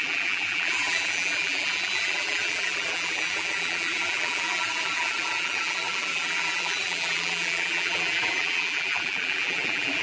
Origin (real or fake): fake